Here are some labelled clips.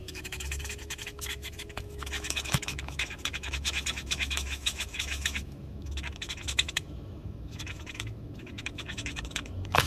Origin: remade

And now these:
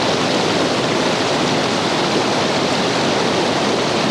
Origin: recorded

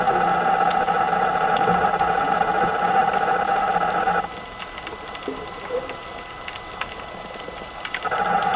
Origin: recorded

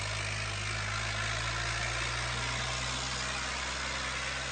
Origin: recorded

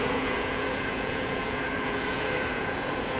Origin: remade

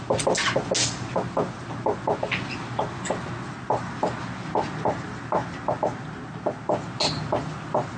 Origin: recorded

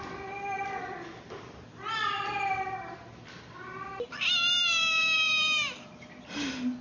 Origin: remade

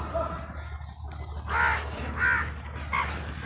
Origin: recorded